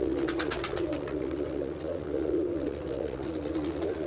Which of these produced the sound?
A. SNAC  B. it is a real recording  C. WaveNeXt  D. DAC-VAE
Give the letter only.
C